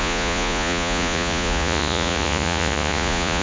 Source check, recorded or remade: remade